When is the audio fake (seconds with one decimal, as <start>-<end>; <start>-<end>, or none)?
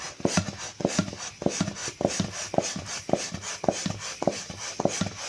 none